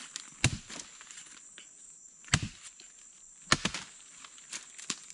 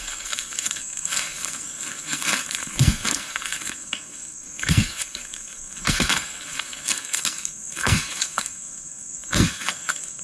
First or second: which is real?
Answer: first